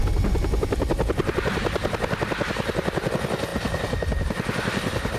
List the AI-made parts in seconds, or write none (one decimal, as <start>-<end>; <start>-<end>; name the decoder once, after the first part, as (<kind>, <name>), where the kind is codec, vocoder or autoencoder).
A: none

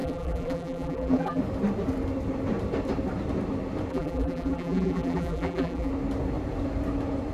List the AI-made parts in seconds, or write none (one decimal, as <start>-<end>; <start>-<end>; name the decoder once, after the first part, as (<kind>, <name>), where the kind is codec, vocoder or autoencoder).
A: 0.0-1.4 (vocoder, BigVGAN v2); 3.9-5.9